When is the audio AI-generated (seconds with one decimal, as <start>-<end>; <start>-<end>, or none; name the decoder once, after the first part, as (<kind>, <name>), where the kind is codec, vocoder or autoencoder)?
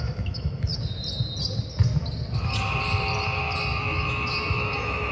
0.0-0.7 (autoencoder, DAC-VAE); 3.8-5.1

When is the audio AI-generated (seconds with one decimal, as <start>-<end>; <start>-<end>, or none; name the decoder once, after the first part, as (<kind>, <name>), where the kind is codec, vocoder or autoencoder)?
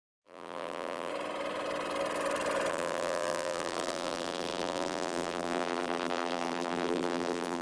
0.0-1.1 (vocoder, BigVGAN v2); 2.7-7.6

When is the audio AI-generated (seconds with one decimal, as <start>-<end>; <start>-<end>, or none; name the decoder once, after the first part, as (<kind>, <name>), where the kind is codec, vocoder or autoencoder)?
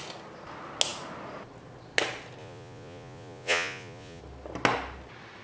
2.4-4.2 (vocoder, Vocos)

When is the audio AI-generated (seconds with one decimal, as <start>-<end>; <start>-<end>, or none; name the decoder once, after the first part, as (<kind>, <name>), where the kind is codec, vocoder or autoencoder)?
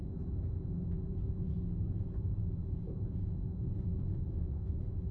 0.0-5.1 (vocoder, Vocos)